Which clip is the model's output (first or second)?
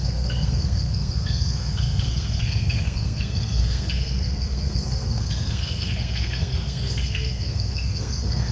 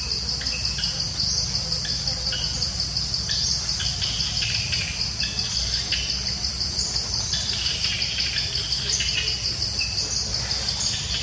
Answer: first